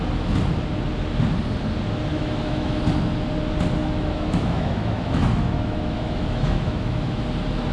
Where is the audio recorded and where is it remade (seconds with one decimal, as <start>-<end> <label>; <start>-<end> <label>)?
0.0-2.1 recorded; 2.1-2.8 remade; 2.8-3.8 recorded; 3.8-7.2 remade; 7.2-7.7 recorded